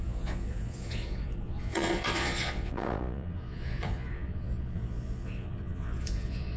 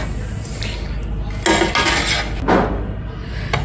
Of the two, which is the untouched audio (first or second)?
second